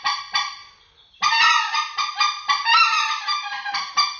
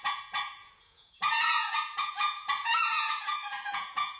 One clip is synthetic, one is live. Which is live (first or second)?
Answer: first